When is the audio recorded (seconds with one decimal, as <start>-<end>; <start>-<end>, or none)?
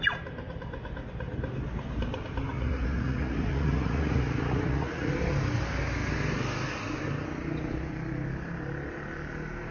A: 0.0-2.5; 5.1-9.7